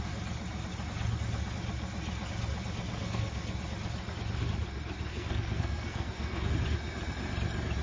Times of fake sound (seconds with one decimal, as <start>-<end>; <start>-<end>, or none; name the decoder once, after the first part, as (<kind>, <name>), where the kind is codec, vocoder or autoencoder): 2.8-3.4 (codec, SNAC); 5.1-6.5